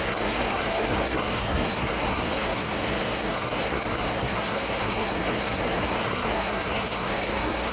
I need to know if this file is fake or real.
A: fake